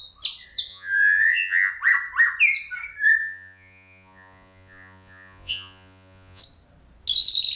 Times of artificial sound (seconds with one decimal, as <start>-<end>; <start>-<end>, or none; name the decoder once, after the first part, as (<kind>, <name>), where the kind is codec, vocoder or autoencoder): 0.7-1.7 (vocoder, Vocos); 3.2-6.4